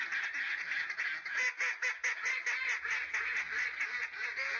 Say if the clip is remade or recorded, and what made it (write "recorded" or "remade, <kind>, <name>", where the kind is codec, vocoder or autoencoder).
recorded